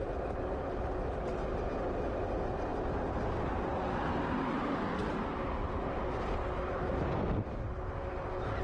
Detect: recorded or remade recorded